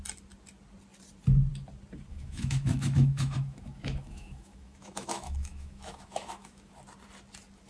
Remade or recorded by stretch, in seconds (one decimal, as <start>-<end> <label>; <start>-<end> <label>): 0.0-2.1 recorded; 2.1-6.7 remade; 6.7-7.7 recorded